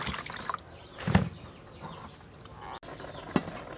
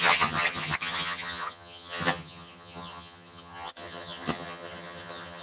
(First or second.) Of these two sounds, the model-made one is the second